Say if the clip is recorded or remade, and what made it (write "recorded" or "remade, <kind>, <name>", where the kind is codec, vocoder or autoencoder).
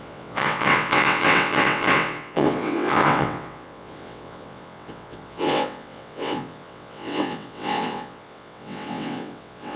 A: remade, vocoder, WaveNeXt